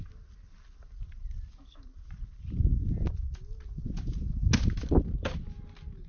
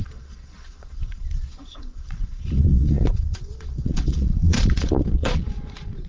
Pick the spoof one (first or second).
second